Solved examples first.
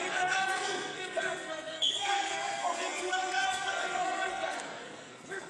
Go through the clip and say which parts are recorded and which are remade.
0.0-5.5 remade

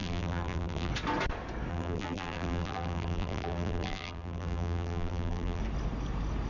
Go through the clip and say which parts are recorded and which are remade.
0.0-0.9 remade; 0.9-1.7 recorded; 1.7-5.6 remade; 5.6-6.5 recorded

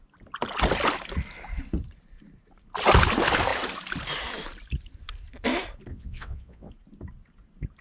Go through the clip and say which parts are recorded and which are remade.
0.0-5.9 recorded; 5.9-6.7 remade; 6.7-7.8 recorded

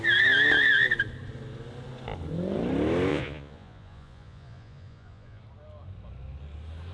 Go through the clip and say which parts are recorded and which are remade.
0.0-3.1 recorded; 3.1-5.4 remade; 5.4-6.9 recorded

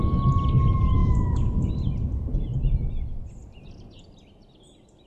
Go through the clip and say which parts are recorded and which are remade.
0.0-1.0 recorded; 1.0-1.7 remade; 1.7-5.1 recorded

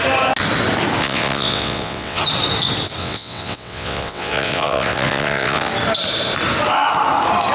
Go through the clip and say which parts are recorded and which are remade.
0.0-1.0 recorded; 1.0-2.2 remade; 2.2-3.0 recorded; 3.0-5.7 remade; 5.7-7.5 recorded

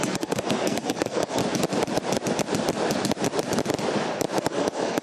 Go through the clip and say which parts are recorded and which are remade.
0.0-1.4 remade; 1.4-4.4 recorded; 4.4-5.0 remade

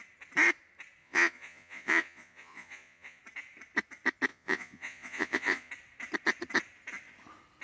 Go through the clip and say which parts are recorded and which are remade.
0.0-1.0 recorded; 1.0-3.2 remade; 3.2-4.3 recorded; 4.3-5.7 remade; 5.7-7.6 recorded